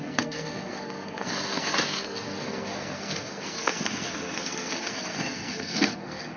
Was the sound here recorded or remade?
remade